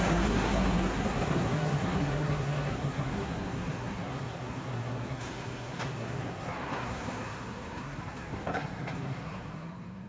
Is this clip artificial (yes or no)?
yes